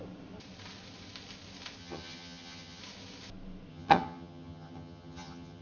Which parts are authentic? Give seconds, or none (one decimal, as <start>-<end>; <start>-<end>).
0.0-1.8; 2.8-3.7